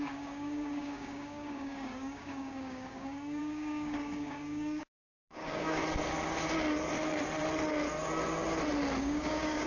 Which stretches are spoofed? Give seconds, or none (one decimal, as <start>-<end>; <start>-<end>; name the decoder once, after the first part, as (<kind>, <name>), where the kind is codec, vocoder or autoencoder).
0.0-5.8 (codec, DAC); 9.0-9.7